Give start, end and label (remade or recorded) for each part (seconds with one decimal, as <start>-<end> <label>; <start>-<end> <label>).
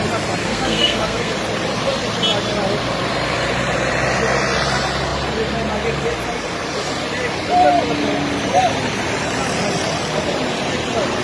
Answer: 0.0-0.4 recorded; 0.4-1.3 remade; 1.3-11.2 recorded